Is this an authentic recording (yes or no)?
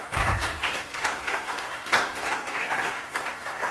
no